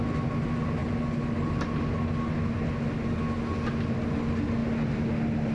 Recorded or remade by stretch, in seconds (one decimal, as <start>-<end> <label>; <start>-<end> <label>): 0.0-5.5 recorded